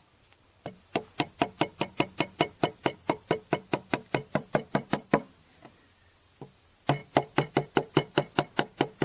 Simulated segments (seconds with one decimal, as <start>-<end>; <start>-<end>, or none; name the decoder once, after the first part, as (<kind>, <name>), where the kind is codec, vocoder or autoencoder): 0.0-9.0 (vocoder, BigVGAN v2)